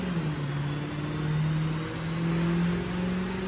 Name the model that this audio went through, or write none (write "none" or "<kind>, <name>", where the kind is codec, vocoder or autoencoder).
none